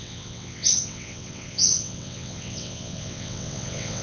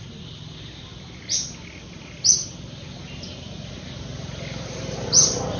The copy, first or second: first